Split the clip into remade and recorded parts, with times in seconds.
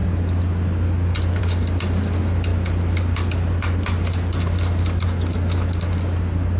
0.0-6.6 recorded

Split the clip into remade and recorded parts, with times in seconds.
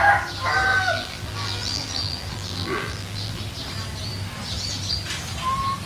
0.0-0.7 recorded; 0.7-3.4 remade; 3.4-5.9 recorded